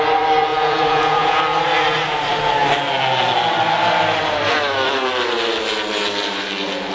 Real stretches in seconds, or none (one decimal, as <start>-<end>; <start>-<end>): 0.0-0.5; 1.4-6.9